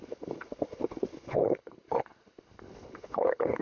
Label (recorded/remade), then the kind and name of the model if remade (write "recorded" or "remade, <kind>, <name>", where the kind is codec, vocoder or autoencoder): remade, codec, HILCodec